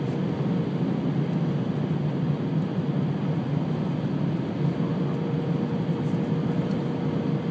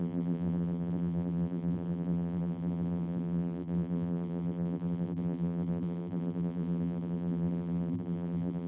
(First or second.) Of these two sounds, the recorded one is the first